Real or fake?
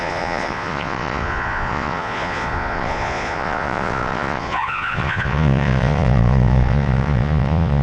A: fake